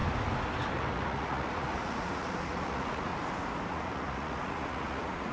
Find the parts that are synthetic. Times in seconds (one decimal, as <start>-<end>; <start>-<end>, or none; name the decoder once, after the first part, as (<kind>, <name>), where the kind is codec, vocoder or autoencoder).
0.7-3.1 (vocoder, Vocos); 3.7-5.3